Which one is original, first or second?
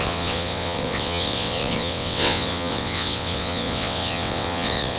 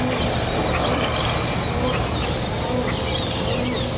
second